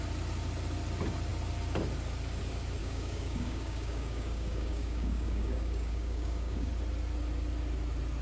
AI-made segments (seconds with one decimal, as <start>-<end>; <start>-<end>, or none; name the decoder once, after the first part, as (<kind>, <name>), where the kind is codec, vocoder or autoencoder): 2.8-6.7 (codec, DAC)